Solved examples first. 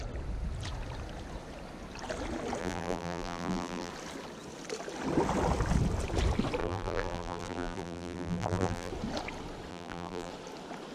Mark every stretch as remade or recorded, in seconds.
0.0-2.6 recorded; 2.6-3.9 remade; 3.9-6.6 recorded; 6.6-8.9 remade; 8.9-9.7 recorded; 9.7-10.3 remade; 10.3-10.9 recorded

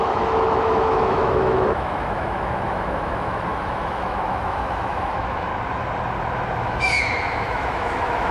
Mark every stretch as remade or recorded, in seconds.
0.0-5.5 remade; 5.5-6.6 recorded; 6.6-8.3 remade

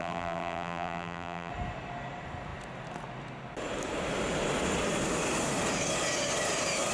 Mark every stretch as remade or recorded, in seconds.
0.0-1.5 remade; 1.5-6.9 recorded

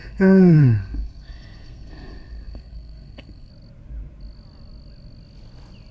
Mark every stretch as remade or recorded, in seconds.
0.0-3.5 remade; 3.5-5.9 recorded

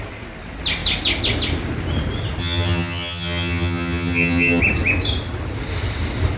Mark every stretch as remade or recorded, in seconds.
0.0-2.4 recorded; 2.4-4.6 remade; 4.6-6.4 recorded